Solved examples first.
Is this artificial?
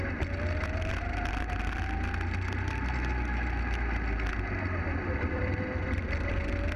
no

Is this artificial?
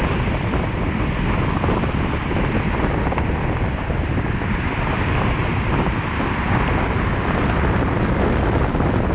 no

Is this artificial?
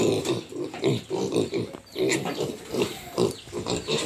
yes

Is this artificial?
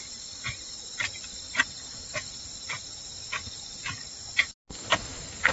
no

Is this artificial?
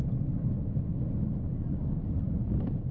yes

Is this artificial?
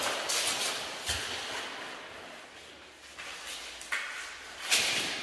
no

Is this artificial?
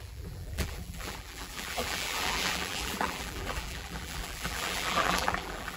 yes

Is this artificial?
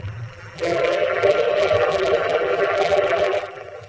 yes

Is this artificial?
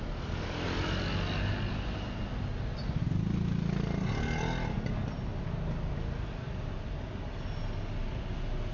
no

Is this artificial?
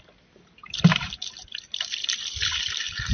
yes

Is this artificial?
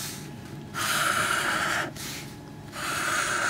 yes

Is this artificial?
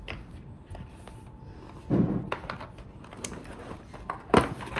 no